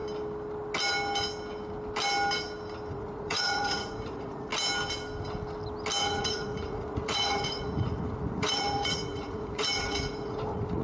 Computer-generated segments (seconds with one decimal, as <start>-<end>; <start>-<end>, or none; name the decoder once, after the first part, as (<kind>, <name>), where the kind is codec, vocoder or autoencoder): 2.9-4.5 (vocoder, Vocos); 6.0-10.8